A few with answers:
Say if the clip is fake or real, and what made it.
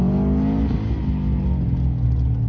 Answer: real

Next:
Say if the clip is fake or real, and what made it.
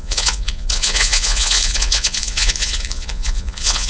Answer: fake, vocoder, Vocos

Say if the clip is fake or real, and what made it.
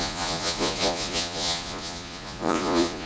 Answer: fake, vocoder, Vocos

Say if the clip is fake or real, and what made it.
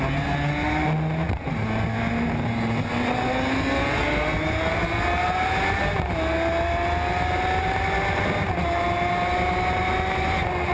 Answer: real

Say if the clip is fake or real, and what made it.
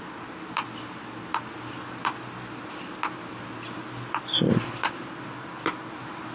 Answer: real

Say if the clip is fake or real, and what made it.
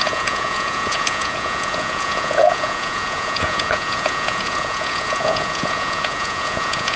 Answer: fake, vocoder, Vocos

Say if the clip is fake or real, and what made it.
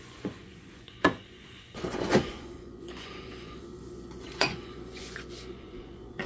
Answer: fake, vocoder, Vocos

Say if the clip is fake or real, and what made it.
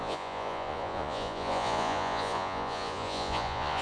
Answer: fake, vocoder, Vocos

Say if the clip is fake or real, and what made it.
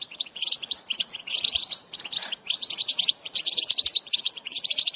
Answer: fake, vocoder, Vocos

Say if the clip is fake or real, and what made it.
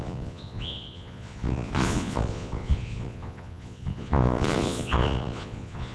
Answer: fake, vocoder, Vocos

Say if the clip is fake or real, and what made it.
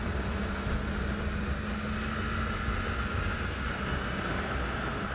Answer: real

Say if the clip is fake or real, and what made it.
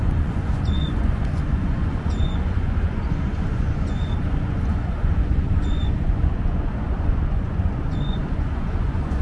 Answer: fake, vocoder, Vocos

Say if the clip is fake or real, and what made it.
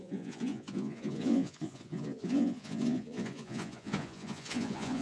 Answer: fake, vocoder, Vocos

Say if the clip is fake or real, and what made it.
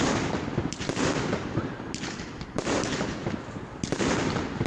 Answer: real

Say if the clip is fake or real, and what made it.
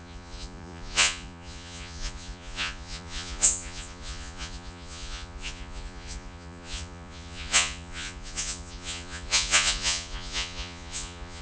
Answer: fake, vocoder, Vocos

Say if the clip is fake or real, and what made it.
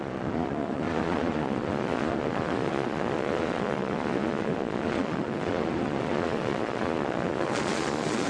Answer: fake, vocoder, Vocos